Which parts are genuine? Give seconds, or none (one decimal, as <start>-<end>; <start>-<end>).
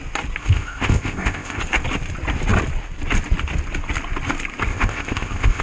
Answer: 0.0-0.4; 1.6-4.7